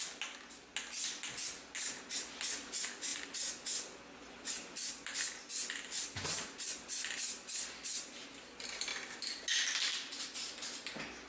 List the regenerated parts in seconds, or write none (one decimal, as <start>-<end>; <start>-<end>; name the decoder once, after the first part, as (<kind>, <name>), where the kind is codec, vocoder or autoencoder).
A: none

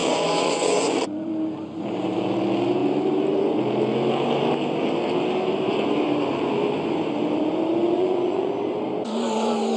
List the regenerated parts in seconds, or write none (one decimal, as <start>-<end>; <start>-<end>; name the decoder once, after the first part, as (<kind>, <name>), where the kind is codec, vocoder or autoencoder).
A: 0.0-1.3 (vocoder, Vocos); 7.8-8.5